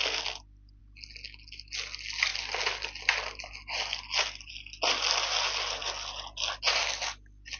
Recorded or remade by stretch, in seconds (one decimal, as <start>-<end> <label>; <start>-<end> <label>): 0.0-7.6 recorded